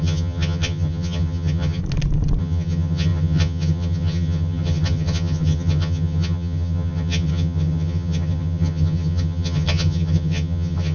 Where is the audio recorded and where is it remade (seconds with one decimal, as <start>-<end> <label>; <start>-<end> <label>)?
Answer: 0.0-1.8 remade; 1.8-2.4 recorded; 2.4-10.9 remade